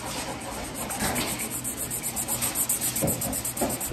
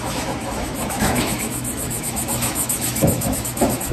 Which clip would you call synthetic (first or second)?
second